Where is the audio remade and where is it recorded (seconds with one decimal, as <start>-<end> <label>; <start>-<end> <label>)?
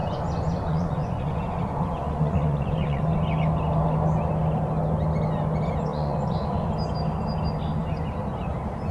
0.0-3.0 remade; 3.0-5.9 recorded; 5.9-6.7 remade; 6.7-8.9 recorded